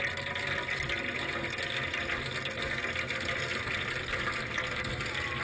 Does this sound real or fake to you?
real